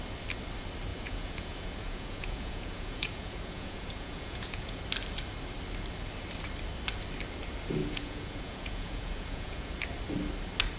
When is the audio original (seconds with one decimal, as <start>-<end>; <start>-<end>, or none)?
0.0-0.9; 4.8-7.8; 9.7-10.8